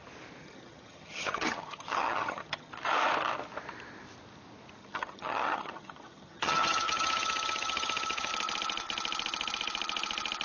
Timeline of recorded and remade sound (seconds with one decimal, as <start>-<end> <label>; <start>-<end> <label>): 0.0-0.4 recorded; 0.4-2.7 remade; 2.7-4.8 recorded; 4.8-8.3 remade; 8.3-10.4 recorded